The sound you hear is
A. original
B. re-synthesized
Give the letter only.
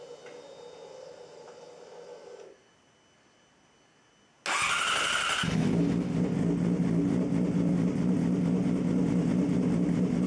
A